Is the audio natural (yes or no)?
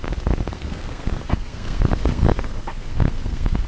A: no